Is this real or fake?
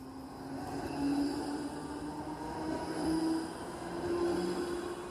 real